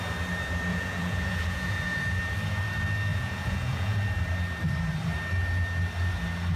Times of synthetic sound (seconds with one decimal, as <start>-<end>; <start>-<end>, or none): 0.7-2.2; 3.1-4.0